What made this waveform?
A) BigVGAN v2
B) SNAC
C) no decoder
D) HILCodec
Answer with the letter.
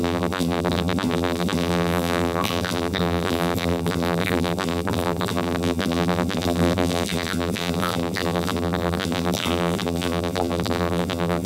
A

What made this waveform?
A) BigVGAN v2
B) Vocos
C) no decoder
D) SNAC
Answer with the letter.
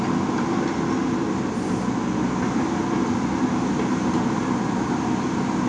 C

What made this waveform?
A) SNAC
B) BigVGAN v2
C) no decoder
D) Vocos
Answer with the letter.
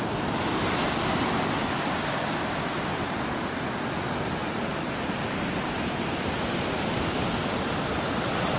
C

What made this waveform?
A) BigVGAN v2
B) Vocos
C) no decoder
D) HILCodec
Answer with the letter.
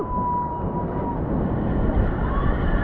C